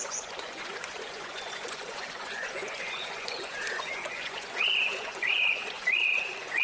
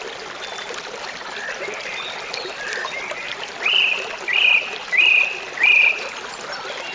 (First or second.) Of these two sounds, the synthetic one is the first